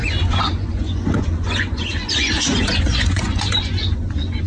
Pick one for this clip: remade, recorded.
remade